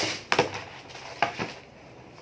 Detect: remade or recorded recorded